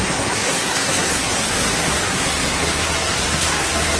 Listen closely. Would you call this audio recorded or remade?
remade